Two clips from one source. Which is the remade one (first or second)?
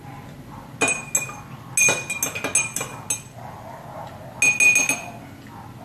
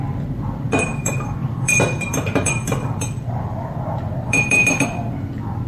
second